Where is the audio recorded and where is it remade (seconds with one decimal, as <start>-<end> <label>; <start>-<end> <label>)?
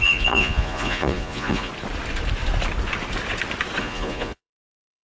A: 0.0-1.7 remade; 1.7-3.8 recorded; 3.8-5.0 remade